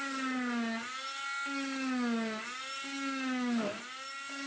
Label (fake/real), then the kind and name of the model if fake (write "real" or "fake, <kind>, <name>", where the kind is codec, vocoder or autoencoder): real